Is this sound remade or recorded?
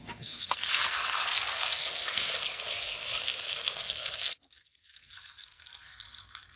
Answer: remade